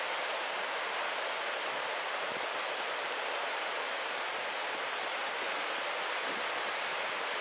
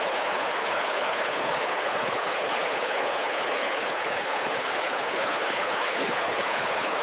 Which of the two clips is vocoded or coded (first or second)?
second